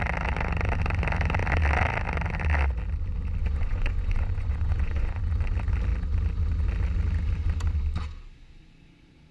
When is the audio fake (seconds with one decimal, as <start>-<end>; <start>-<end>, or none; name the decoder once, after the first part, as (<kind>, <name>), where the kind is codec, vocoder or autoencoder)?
3.4-5.2 (vocoder, Vocos)